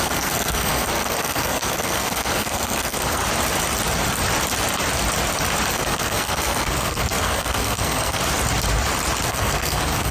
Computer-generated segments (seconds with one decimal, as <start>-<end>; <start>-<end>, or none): 0.0-3.2; 5.7-8.2; 9.3-10.1